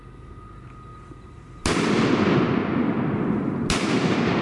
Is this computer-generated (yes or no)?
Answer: no